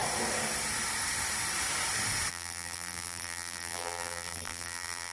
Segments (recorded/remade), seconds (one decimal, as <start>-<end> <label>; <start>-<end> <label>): 0.0-2.3 recorded; 2.3-5.1 remade